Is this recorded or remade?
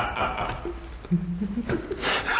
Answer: recorded